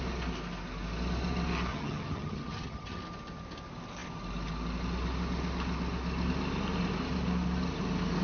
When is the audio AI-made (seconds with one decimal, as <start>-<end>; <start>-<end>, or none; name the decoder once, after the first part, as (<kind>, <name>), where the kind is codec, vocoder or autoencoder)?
1.7-3.0 (vocoder, HiFi-GAN)